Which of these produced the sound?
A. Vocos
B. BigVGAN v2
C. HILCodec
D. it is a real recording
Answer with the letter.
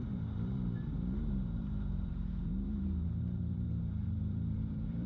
B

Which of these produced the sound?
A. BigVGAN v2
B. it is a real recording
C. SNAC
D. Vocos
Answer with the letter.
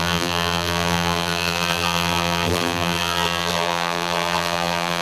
A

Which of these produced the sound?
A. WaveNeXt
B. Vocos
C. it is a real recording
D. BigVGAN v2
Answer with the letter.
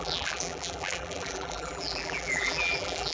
D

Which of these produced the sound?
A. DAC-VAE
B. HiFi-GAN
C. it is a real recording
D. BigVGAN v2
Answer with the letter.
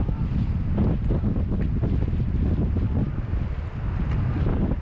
C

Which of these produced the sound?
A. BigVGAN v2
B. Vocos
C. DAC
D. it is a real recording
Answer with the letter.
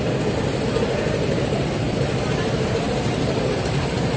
A